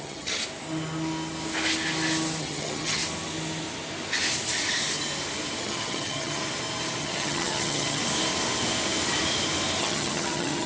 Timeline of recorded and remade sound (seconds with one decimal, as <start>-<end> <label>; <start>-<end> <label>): 0.0-0.4 remade; 0.4-2.4 recorded; 2.4-3.0 remade; 3.0-5.6 recorded; 5.6-6.4 remade; 6.4-7.0 recorded; 7.0-8.0 remade; 8.0-9.8 recorded; 9.8-10.7 remade